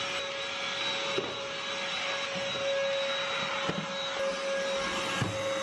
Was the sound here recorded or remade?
recorded